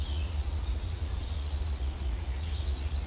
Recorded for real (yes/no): no